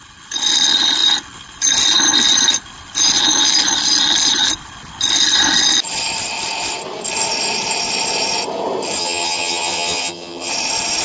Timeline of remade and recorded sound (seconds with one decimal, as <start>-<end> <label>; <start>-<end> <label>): 0.0-9.0 recorded; 9.0-10.5 remade; 10.5-11.0 recorded